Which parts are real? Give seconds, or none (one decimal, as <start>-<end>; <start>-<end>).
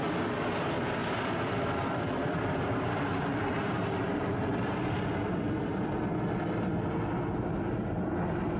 0.0-1.0; 6.1-8.6